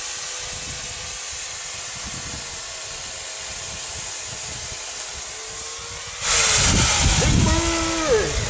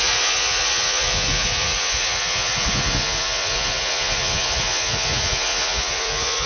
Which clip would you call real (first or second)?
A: first